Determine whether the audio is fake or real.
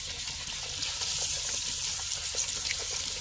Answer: real